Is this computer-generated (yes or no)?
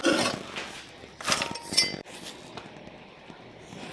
no